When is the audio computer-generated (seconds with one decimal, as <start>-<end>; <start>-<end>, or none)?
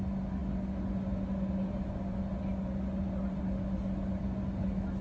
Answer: none